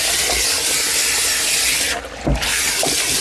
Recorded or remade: recorded